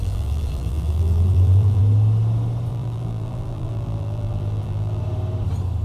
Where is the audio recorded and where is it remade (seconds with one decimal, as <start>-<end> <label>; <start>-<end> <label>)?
0.0-1.8 remade; 1.8-2.7 recorded; 2.7-5.0 remade; 5.0-5.8 recorded